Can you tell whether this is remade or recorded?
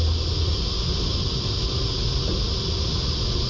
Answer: recorded